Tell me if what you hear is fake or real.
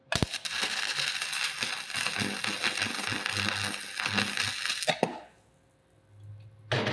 real